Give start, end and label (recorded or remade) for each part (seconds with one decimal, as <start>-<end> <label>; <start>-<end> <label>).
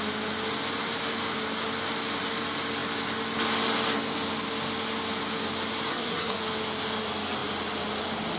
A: 0.0-5.9 recorded; 5.9-6.4 remade; 6.4-8.4 recorded